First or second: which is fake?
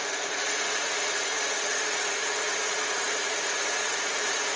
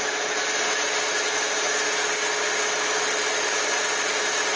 first